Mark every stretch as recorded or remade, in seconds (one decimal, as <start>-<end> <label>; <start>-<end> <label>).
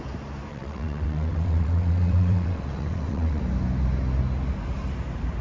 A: 0.0-0.5 recorded; 0.5-3.4 remade; 3.4-5.4 recorded